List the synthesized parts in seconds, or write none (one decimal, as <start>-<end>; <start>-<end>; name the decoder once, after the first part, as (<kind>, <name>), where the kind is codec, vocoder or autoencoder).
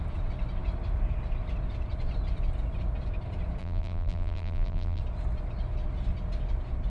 3.6-5.0 (vocoder, BigVGAN v2)